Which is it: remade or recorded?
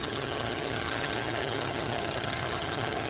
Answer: remade